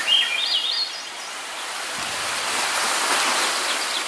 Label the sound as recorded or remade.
recorded